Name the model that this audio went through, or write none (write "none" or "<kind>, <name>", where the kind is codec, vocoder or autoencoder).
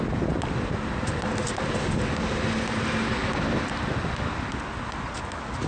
none